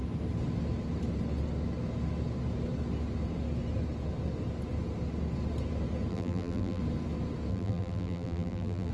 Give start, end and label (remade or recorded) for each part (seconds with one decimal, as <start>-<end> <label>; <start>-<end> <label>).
0.0-6.1 recorded; 6.1-6.8 remade; 6.8-7.5 recorded; 7.5-8.9 remade